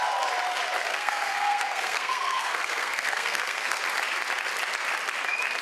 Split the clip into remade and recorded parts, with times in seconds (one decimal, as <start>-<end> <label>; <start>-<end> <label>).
0.0-0.9 recorded; 0.9-3.8 remade; 3.8-5.6 recorded